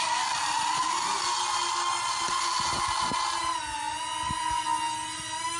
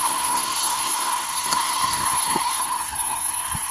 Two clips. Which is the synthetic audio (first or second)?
second